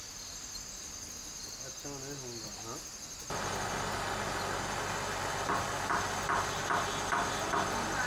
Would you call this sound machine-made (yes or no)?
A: no